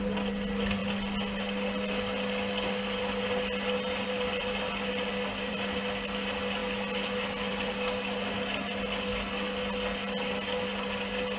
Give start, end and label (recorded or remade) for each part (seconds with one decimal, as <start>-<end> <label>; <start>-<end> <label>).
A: 0.0-11.4 recorded